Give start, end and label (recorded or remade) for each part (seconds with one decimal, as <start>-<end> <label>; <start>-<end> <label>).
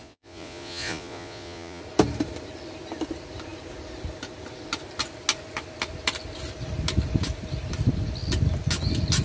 0.0-1.8 remade; 1.8-9.2 recorded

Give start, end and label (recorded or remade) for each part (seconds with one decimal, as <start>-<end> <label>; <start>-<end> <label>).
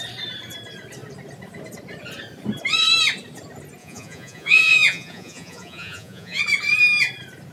0.0-3.8 recorded; 3.8-6.4 remade; 6.4-7.5 recorded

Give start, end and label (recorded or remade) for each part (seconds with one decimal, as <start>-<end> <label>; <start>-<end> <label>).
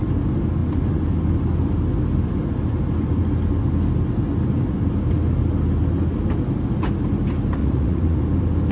0.0-7.6 recorded; 7.6-8.2 remade; 8.2-8.7 recorded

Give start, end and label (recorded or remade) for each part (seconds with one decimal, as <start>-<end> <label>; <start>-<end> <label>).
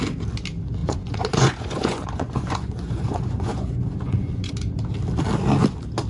0.0-0.8 recorded; 0.8-4.5 remade; 4.5-6.1 recorded